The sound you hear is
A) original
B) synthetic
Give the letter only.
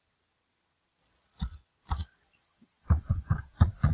B